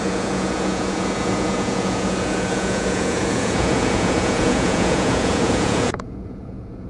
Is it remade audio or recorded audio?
remade